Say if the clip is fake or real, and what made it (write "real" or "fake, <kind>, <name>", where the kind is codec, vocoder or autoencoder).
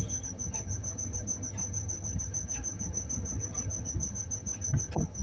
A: fake, vocoder, HiFi-GAN